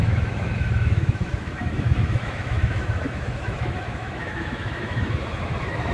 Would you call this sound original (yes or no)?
no